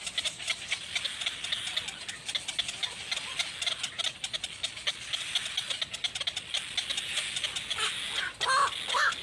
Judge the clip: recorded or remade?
recorded